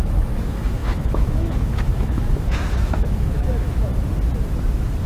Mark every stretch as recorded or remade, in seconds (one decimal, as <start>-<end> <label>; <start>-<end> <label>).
0.0-3.9 remade; 3.9-5.1 recorded